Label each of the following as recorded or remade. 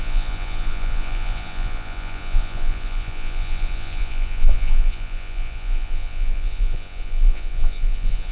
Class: remade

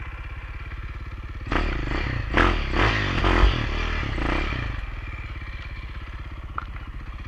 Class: recorded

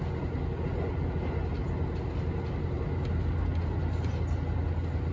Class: recorded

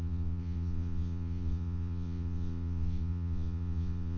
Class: remade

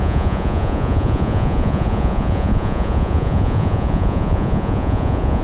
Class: remade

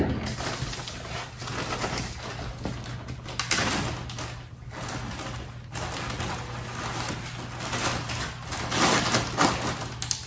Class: recorded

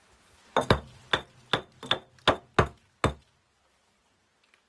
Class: recorded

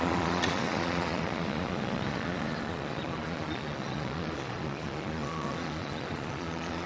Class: remade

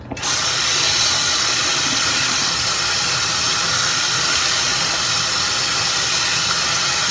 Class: recorded